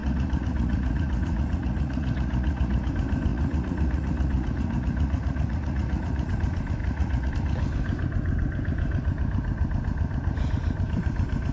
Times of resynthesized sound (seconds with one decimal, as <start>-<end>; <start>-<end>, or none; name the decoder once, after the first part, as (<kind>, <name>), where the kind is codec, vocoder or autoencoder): 0.0-2.9 (vocoder, Vocos); 3.3-6.3; 6.8-7.3